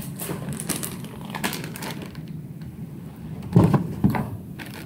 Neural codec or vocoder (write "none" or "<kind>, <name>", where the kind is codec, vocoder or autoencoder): vocoder, BigVGAN v2